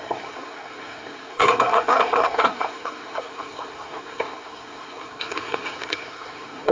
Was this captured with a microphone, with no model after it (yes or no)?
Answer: no